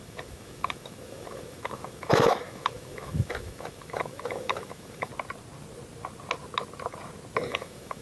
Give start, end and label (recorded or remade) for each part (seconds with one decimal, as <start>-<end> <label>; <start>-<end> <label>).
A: 0.0-5.1 remade; 5.1-7.5 recorded; 7.5-8.0 remade